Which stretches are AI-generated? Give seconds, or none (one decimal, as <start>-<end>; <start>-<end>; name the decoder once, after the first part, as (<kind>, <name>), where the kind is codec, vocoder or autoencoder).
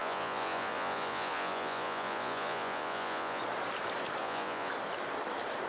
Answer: 0.0-3.4 (vocoder, Vocos); 4.2-4.7